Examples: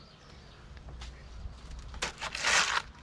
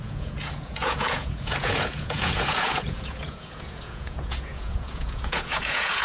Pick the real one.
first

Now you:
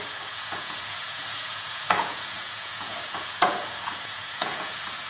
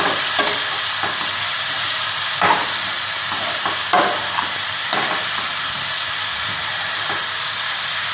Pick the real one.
second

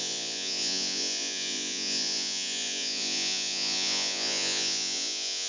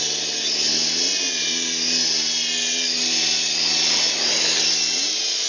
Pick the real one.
second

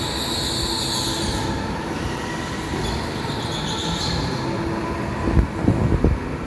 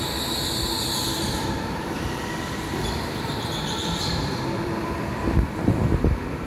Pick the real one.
first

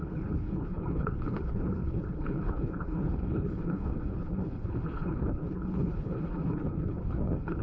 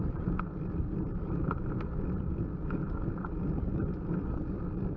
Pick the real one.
second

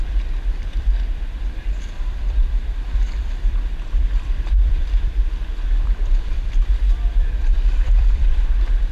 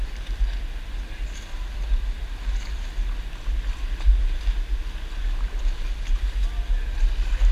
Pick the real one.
second